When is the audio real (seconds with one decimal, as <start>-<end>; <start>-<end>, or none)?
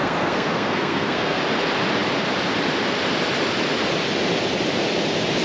1.4-5.4